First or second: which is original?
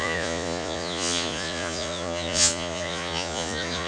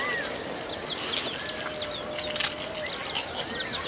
second